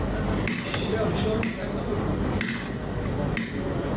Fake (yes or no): no